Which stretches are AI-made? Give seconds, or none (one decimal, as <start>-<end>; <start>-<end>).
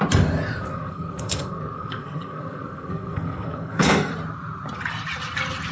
0.7-4.1